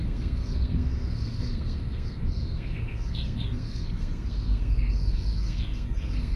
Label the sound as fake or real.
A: fake